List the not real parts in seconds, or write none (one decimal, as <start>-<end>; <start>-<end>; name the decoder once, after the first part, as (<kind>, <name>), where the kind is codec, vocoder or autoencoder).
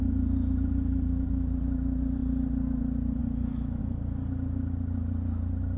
none